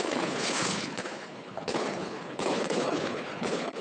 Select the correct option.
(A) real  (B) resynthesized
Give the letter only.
B